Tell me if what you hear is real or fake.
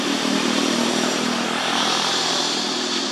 fake